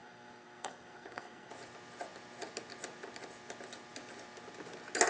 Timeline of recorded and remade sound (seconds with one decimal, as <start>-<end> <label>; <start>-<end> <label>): 0.0-1.5 remade; 1.5-5.1 recorded